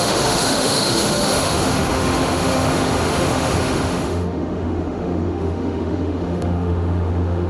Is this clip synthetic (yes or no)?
yes